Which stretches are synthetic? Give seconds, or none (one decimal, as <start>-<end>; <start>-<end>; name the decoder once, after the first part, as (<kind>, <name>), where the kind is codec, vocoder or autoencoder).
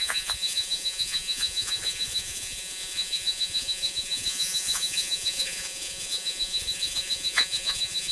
0.0-8.1 (vocoder, Vocos)